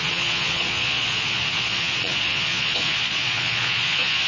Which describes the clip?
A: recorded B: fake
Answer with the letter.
B